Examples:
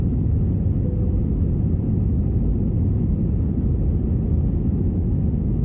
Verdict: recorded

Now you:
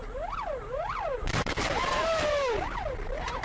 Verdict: remade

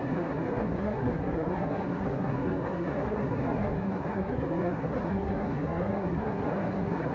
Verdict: remade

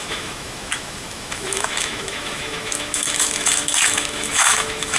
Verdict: remade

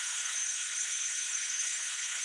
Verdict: remade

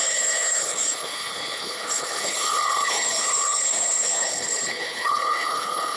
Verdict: remade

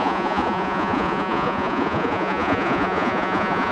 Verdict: remade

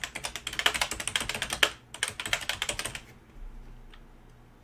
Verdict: recorded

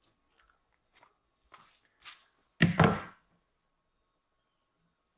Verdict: recorded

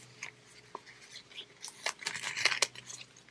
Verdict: recorded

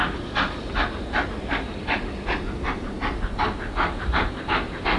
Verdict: recorded